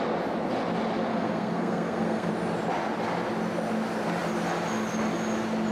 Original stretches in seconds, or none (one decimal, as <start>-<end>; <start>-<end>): 0.0-1.1; 2.3-5.7